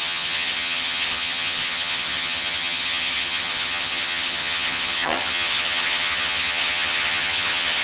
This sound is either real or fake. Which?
fake